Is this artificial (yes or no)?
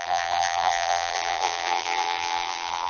yes